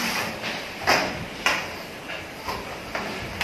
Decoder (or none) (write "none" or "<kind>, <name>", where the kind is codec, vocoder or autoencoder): vocoder, BigVGAN v2